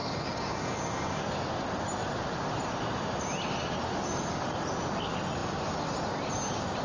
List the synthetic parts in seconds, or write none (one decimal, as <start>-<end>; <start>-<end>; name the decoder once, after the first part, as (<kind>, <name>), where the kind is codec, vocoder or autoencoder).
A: 0.0-1.2 (codec, DAC)